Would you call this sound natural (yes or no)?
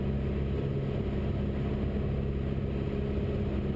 yes